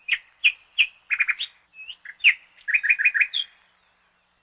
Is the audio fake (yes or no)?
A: no